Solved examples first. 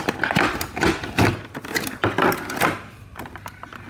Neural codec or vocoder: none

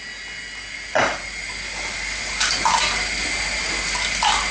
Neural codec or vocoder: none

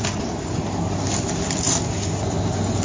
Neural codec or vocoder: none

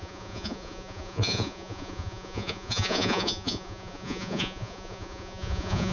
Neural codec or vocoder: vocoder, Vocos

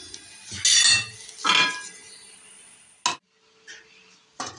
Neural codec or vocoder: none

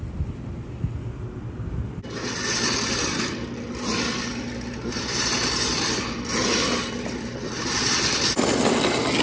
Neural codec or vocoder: none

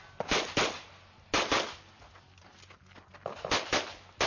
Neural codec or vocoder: none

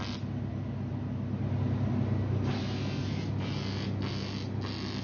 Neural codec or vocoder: none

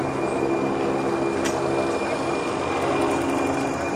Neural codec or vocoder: none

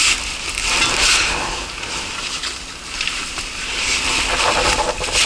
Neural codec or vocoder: none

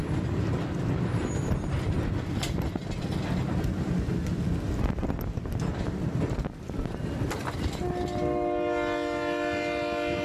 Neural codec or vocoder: none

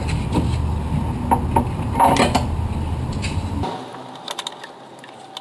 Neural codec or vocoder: none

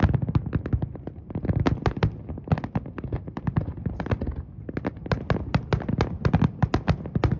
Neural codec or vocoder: none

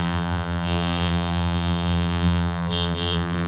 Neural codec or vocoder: vocoder, BigVGAN v2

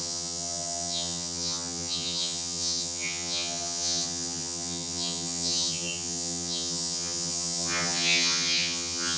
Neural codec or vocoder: vocoder, HiFi-GAN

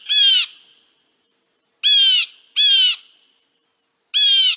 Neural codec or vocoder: none